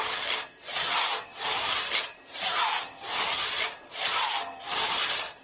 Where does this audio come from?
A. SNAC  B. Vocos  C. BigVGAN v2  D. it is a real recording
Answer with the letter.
D